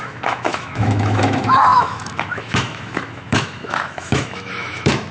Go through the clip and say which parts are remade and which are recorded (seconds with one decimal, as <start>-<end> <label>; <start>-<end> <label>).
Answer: 0.0-5.1 remade